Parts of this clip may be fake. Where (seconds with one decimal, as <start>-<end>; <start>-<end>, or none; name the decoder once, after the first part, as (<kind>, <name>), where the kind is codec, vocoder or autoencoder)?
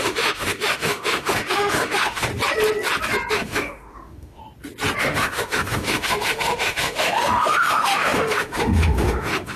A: 0.0-2.3 (autoencoder, DAC-VAE); 3.3-4.4; 5.0-9.6